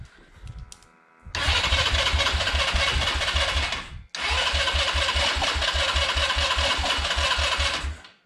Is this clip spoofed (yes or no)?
no